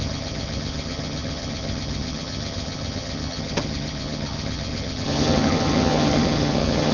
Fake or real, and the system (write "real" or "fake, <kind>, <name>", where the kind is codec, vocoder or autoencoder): fake, vocoder, HiFi-GAN